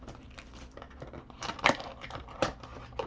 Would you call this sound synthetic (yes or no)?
yes